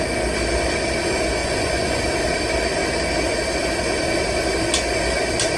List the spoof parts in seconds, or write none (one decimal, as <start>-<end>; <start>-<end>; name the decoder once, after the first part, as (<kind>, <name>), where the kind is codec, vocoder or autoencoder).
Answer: 1.4-2.0 (vocoder, Vocos)